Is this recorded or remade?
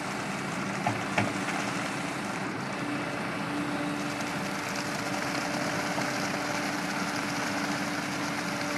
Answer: recorded